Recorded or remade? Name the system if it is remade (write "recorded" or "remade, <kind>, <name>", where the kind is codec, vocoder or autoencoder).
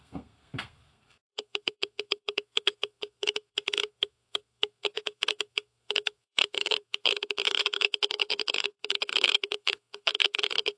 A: remade, codec, SNAC